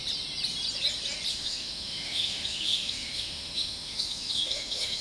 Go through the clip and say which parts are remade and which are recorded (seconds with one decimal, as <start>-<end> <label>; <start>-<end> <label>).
0.0-1.3 recorded; 1.3-5.0 remade